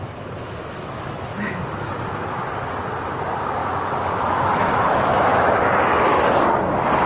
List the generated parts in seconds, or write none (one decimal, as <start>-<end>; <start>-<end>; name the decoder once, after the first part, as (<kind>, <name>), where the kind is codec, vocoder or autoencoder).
0.4-1.6 (autoencoder, DAC-VAE); 3.6-6.2